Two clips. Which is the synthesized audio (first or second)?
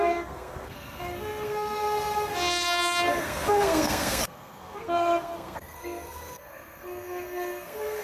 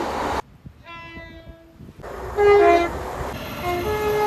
first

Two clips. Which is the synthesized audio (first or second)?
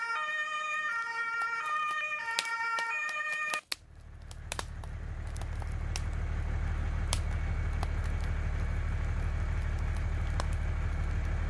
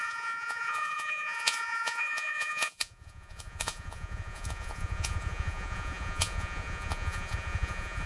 second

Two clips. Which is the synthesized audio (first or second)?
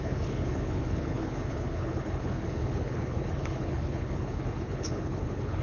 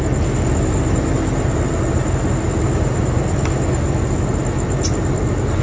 first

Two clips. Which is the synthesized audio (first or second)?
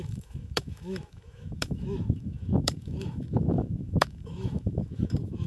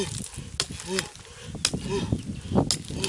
first